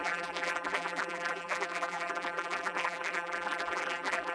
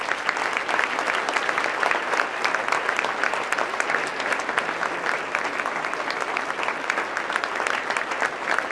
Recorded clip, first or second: second